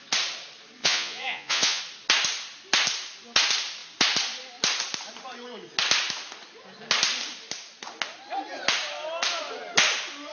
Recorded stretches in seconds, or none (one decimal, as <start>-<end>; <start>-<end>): 0.0-0.8; 1.8-10.3